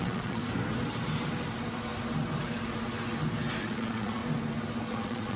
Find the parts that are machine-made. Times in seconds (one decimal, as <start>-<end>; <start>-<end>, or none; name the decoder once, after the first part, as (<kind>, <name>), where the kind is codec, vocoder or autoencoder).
0.0-0.4 (vocoder, Vocos); 3.6-4.2; 4.9-5.4

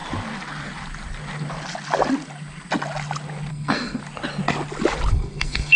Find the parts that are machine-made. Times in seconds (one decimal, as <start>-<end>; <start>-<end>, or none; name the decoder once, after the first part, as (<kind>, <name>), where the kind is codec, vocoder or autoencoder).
3.5-4.0 (codec, SNAC); 5.1-5.8

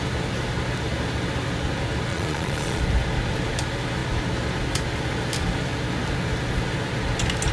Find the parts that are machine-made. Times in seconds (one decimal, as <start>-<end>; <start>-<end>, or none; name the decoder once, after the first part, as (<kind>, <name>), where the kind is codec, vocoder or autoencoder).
2.1-2.8 (vocoder, Vocos)

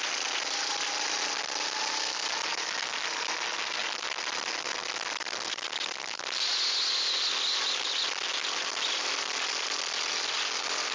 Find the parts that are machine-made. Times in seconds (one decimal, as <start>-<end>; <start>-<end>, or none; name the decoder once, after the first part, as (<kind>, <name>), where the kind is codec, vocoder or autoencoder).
none